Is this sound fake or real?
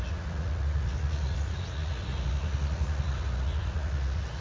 fake